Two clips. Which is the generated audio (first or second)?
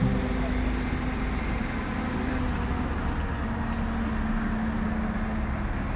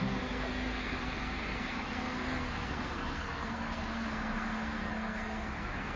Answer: second